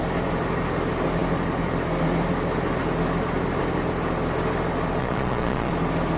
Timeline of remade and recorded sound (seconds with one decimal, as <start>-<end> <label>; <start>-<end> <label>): 0.0-5.0 recorded; 5.0-5.7 remade; 5.7-6.2 recorded